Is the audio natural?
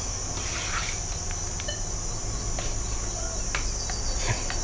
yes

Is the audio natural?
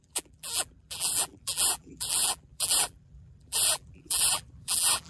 no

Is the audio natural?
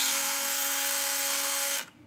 no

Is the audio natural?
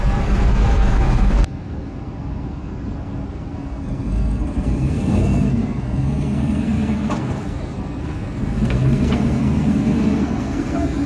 no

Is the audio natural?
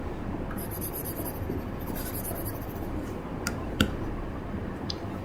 no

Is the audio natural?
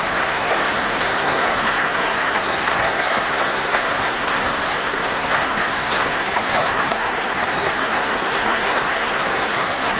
no